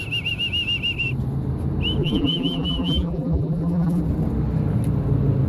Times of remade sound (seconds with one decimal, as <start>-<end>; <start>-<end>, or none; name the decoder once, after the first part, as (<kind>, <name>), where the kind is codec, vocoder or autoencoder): 2.0-4.0 (vocoder, BigVGAN v2)